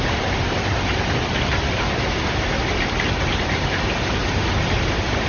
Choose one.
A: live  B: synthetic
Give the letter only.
A